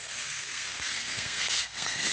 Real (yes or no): no